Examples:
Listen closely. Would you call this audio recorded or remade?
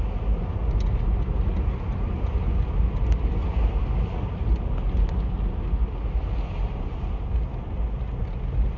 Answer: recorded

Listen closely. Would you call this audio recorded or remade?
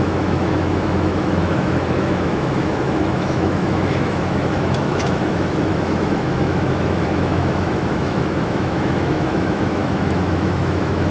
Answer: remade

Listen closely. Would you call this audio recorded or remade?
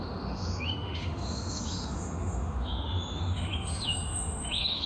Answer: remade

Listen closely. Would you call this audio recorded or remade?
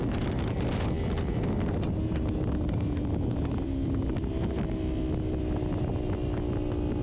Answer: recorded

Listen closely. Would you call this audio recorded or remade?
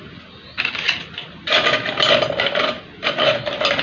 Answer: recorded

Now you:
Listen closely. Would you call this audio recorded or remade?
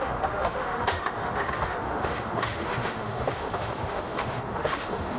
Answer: remade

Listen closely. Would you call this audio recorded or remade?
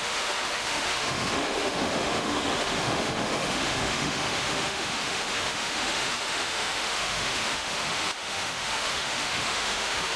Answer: remade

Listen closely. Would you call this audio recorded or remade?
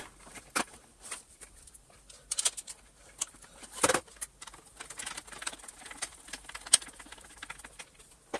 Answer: recorded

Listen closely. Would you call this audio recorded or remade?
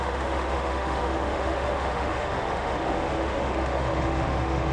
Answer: remade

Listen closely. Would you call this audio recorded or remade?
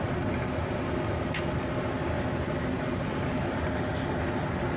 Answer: recorded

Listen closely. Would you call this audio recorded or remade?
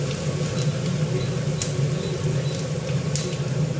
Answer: recorded